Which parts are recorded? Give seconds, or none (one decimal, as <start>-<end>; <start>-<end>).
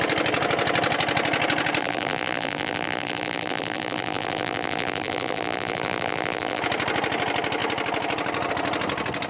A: 0.0-1.8; 6.6-9.3